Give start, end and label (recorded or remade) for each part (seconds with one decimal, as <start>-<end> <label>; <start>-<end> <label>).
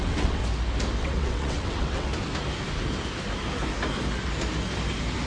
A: 0.0-0.4 remade; 0.4-1.0 recorded; 1.0-2.1 remade; 2.1-5.3 recorded